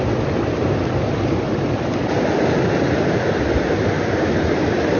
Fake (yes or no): no